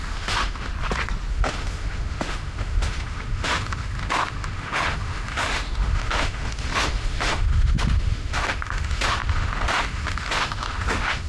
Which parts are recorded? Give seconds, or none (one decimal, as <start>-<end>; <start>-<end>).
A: 0.7-1.3